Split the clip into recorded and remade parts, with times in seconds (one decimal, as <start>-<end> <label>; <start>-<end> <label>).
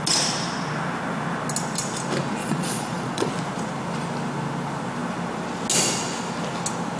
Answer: 0.0-2.4 recorded; 2.4-3.3 remade; 3.3-7.0 recorded